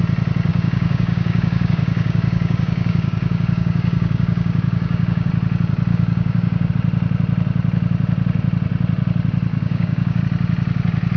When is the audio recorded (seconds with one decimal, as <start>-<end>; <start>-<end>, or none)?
0.0-0.5; 5.3-5.9; 6.7-9.5; 10.2-11.2